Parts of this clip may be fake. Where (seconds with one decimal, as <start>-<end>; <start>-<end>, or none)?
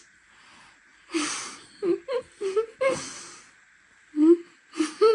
none